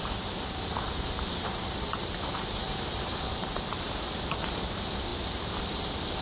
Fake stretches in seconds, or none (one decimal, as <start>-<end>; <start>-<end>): 0.0-6.2

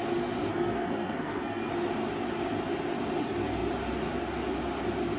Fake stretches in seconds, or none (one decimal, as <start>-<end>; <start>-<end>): 0.5-1.7

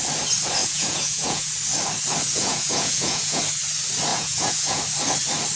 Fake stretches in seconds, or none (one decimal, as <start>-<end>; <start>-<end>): 0.6-1.5; 2.3-3.4; 4.1-4.8

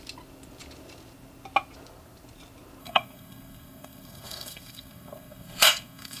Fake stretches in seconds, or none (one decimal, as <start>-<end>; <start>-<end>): 2.8-6.2

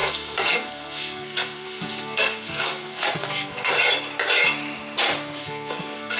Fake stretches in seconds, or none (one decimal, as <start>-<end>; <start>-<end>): 0.0-3.7; 5.4-6.2

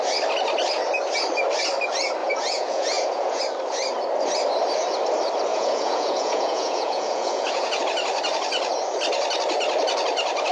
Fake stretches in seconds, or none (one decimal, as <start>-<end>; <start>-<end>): 2.2-3.4; 5.5-7.8

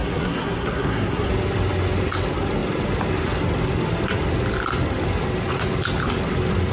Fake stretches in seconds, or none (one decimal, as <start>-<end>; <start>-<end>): 0.0-1.3

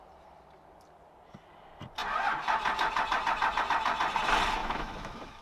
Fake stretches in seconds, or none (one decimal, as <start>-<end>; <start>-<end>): 4.6-5.4